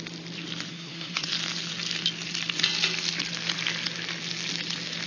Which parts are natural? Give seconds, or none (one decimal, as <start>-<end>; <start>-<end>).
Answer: 0.0-0.7; 1.3-5.1